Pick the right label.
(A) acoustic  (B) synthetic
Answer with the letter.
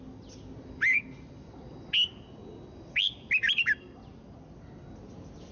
A